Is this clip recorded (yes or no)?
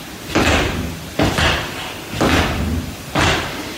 yes